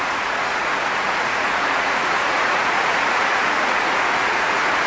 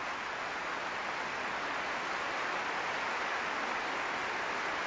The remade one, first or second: first